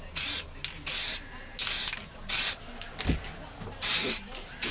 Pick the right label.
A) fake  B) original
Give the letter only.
B